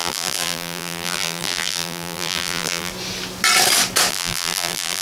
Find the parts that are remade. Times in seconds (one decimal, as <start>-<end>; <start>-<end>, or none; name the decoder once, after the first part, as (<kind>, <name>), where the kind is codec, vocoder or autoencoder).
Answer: 0.0-2.9 (vocoder, BigVGAN v2); 4.1-5.0